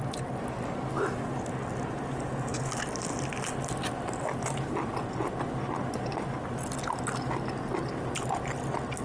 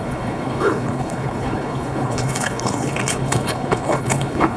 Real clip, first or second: first